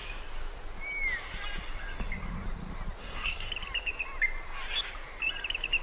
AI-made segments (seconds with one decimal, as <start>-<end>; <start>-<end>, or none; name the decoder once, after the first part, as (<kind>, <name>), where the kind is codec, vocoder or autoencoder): 3.0-3.5 (codec, SNAC)